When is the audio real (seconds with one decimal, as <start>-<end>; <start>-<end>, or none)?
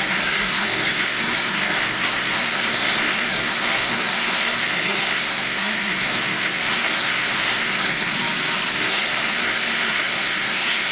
8.1-8.7